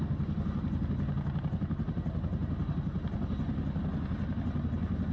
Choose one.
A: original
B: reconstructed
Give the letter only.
A